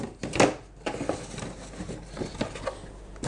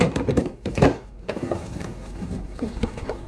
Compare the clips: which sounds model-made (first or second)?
second